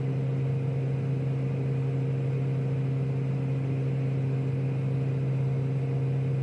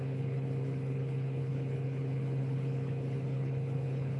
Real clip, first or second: first